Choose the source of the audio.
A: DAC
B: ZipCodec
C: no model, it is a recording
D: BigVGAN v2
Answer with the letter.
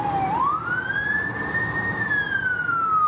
D